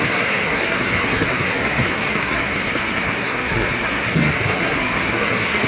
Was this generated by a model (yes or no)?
yes